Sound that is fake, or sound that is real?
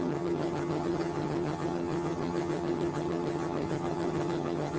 fake